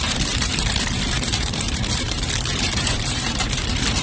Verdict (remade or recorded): remade